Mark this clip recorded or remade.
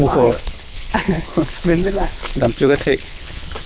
remade